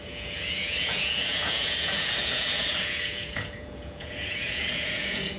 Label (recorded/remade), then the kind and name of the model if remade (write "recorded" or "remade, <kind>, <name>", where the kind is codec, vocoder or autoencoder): remade, vocoder, Vocos